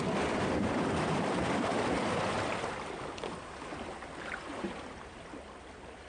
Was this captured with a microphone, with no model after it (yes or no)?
yes